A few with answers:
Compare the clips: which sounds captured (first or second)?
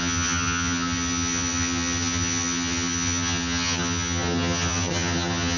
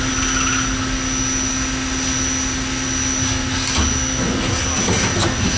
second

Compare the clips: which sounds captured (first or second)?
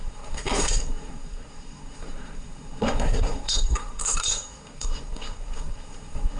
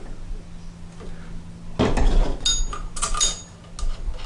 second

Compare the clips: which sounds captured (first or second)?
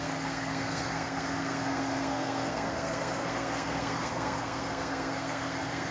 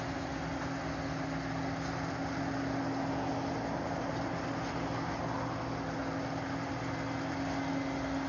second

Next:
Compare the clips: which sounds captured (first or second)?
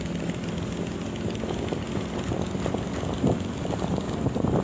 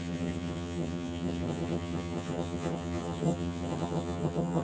first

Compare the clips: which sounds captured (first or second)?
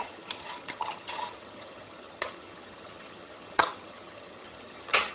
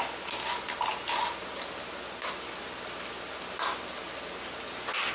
second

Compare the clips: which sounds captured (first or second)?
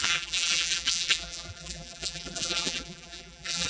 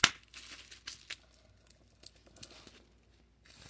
second